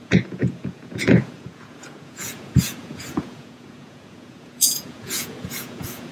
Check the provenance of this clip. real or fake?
fake